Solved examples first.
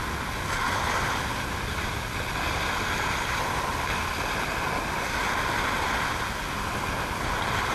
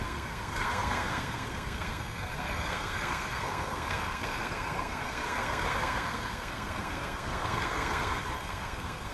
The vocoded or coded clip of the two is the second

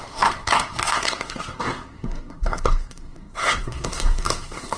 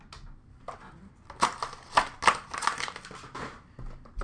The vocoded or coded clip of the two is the first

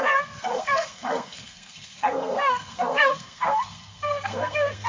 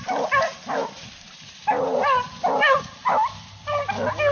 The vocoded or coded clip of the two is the first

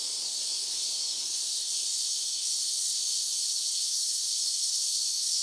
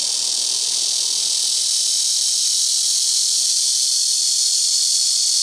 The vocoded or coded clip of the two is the first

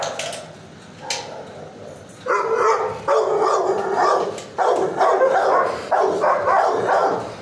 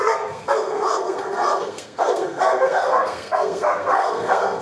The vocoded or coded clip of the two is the second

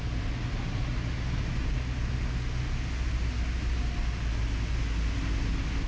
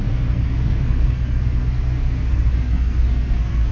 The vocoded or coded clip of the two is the second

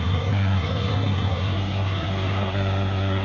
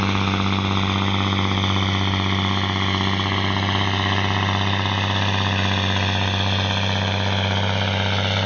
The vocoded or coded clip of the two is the first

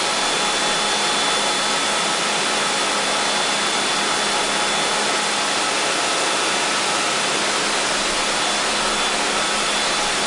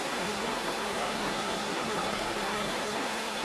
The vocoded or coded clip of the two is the second